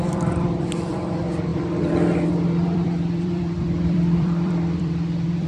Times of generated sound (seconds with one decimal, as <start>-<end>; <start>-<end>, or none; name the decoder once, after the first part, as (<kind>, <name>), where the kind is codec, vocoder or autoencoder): 0.0-5.5 (vocoder, BigVGAN v2)